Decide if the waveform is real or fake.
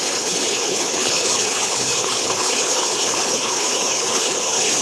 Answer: fake